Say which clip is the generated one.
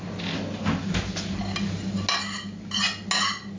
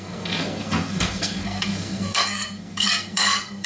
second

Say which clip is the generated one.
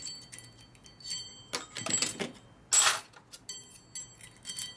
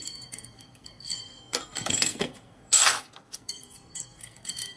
second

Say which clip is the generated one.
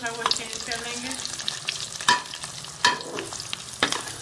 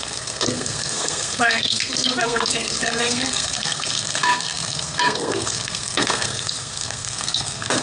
second